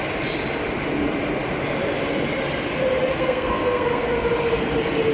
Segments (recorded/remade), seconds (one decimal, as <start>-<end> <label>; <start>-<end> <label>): 0.0-3.1 recorded; 3.1-4.3 remade; 4.3-5.1 recorded